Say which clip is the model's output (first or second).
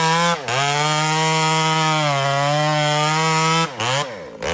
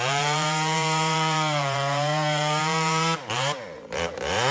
second